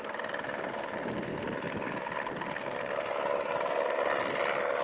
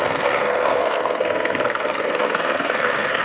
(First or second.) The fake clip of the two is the second